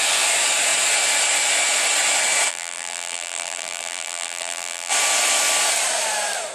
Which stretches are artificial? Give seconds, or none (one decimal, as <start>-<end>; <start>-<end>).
2.5-4.9